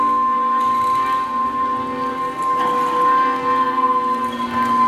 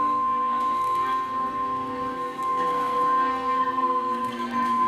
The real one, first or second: first